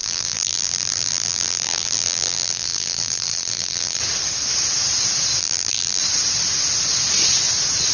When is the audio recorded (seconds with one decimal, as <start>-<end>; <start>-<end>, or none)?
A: 4.0-5.4; 6.0-7.9

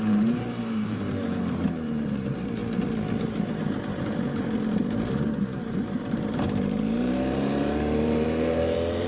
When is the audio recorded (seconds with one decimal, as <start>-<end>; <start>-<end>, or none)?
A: 2.6-3.2

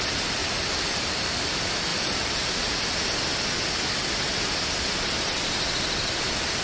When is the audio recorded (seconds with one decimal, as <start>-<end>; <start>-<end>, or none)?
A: 0.0-0.4; 1.5-1.9; 2.5-6.6